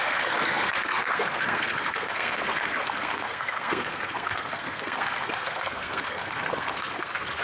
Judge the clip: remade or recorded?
remade